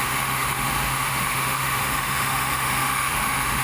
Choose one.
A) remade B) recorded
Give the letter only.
A